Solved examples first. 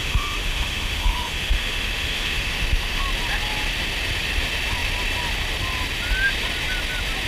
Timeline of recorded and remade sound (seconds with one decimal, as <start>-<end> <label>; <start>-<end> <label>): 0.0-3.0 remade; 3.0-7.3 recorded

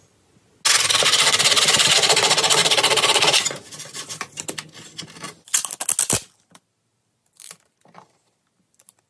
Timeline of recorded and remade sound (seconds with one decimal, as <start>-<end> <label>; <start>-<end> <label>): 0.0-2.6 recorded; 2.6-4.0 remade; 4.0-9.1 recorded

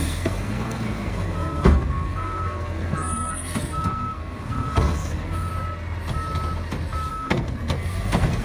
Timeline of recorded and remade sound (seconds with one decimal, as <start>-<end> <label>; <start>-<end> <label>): 0.0-5.5 remade; 5.5-7.1 recorded; 7.1-8.4 remade

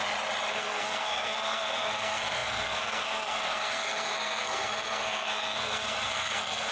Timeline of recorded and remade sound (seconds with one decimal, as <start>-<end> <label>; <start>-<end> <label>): 0.0-0.5 recorded; 0.5-6.7 remade

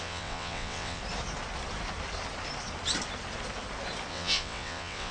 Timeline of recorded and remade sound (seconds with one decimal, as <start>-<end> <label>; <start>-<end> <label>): 0.0-1.0 remade; 1.0-4.1 recorded; 4.1-5.1 remade